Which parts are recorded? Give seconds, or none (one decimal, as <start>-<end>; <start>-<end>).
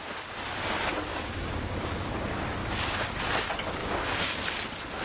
0.0-1.1; 2.1-2.6; 3.1-3.8; 4.4-5.0